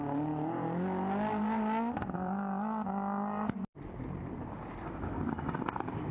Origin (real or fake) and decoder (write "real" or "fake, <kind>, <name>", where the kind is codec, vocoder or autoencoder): real